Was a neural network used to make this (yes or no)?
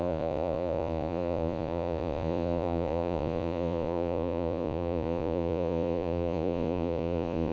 yes